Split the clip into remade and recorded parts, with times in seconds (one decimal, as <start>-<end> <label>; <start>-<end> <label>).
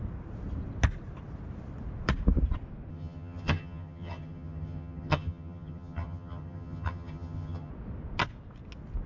0.0-2.9 recorded; 2.9-7.7 remade; 7.7-9.1 recorded